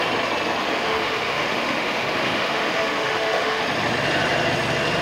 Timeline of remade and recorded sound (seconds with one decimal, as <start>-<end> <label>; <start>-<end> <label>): 0.0-0.6 recorded; 0.6-3.6 remade; 3.6-5.0 recorded